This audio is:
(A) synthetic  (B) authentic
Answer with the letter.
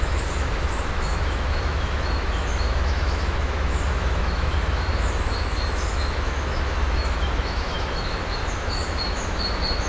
A